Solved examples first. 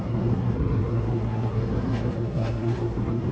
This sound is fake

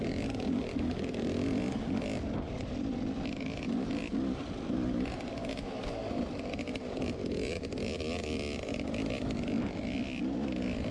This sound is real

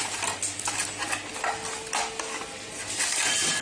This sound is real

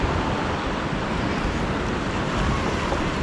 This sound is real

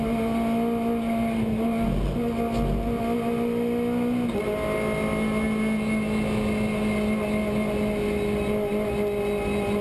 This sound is real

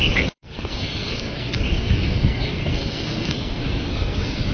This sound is fake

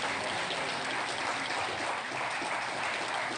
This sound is real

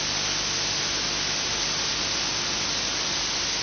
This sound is real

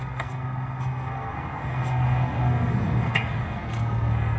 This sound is fake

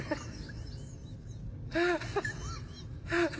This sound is real